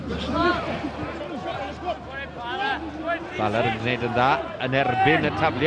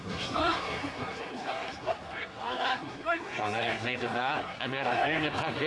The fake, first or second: second